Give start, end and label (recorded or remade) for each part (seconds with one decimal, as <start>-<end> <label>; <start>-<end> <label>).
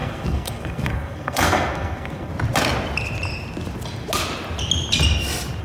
0.0-2.3 remade; 2.3-5.6 recorded